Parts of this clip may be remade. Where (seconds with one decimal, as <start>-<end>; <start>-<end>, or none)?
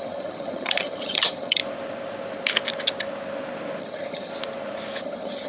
0.0-1.6; 3.8-4.3; 5.0-5.5